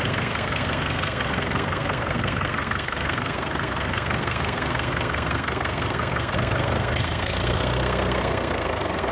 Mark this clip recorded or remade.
remade